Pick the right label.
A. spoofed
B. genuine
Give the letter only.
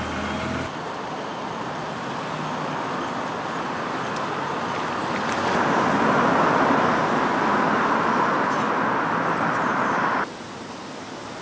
B